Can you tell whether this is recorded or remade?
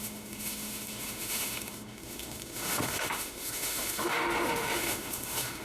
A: remade